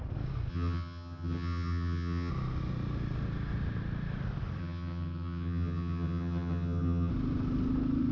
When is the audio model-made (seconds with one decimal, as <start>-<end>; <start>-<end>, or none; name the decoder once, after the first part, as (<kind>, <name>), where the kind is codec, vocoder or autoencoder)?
0.5-2.3 (vocoder, HiFi-GAN); 4.6-7.1